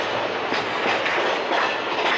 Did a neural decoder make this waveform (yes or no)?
no